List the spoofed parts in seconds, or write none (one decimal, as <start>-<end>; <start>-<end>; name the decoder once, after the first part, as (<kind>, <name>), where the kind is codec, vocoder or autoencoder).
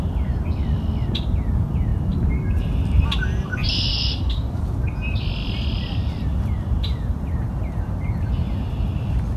3.9-4.6 (codec, DAC)